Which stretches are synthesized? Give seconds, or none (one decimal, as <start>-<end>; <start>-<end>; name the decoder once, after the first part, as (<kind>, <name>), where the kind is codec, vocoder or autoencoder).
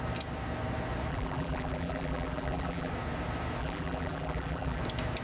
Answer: 1.1-2.9 (vocoder, BigVGAN v2); 3.6-4.8